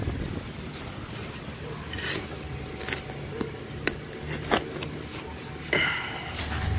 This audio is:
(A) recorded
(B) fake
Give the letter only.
A